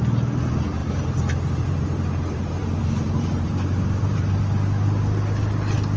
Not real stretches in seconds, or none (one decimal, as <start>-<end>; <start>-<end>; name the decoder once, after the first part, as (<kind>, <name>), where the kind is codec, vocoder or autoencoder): 0.8-4.4 (vocoder, BigVGAN v2)